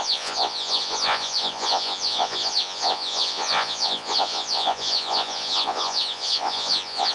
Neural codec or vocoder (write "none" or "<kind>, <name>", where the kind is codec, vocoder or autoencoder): vocoder, Vocos